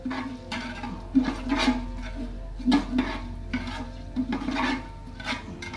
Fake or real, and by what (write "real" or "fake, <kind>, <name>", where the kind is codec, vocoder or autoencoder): real